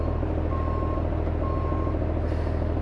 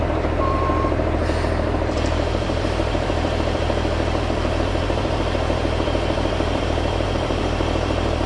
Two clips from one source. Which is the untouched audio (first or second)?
first